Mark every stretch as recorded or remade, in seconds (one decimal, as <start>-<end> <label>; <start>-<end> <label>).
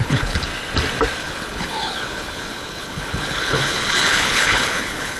0.0-0.5 remade; 0.5-1.2 recorded; 1.2-5.2 remade